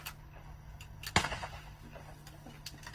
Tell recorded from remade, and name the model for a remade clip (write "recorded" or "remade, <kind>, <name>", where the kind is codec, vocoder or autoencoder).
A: recorded